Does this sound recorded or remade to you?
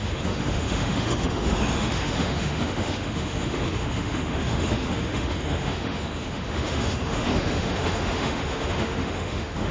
remade